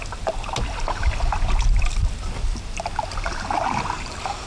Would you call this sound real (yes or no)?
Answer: yes